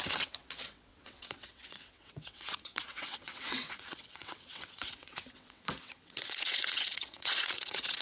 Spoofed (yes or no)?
yes